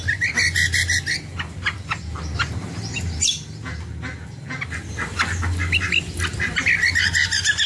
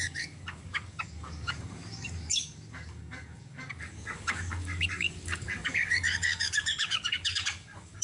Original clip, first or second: first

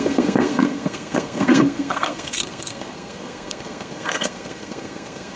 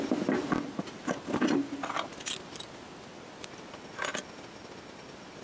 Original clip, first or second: second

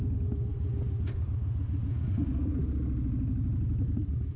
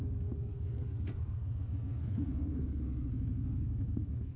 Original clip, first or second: first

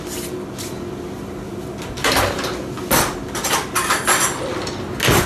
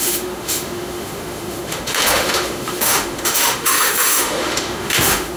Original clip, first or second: first